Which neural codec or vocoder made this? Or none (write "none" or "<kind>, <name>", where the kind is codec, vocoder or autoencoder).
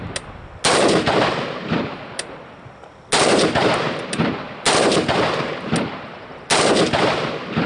none